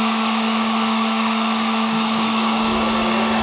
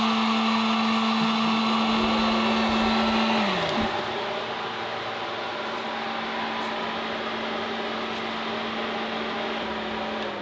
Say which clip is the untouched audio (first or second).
second